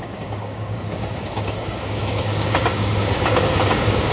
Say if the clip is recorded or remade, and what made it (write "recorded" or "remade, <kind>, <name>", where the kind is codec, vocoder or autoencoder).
remade, codec, DAC